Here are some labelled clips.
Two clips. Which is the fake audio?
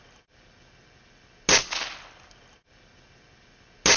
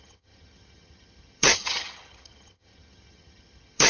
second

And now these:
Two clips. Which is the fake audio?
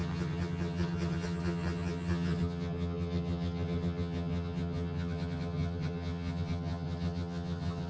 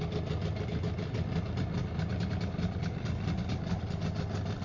first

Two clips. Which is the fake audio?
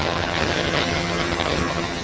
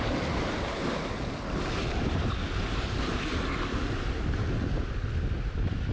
first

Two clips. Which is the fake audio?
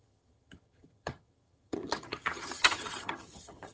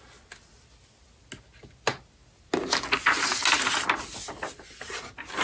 first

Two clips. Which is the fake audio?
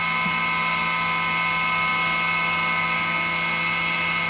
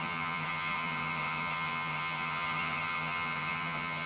second